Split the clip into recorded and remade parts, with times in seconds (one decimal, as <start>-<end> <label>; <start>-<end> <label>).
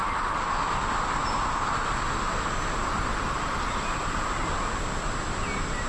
0.0-2.9 recorded; 2.9-3.8 remade; 3.8-5.9 recorded